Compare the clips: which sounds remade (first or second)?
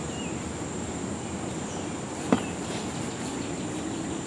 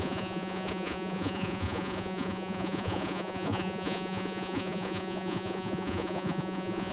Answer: second